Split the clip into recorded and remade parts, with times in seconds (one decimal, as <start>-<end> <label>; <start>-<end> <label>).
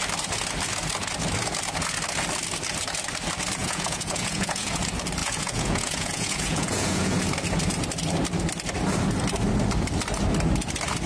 0.0-3.6 recorded; 3.6-4.8 remade; 4.8-5.2 recorded; 5.2-7.2 remade; 7.2-11.1 recorded